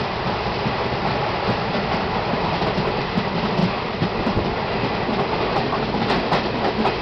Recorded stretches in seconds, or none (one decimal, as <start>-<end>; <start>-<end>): 0.0-7.0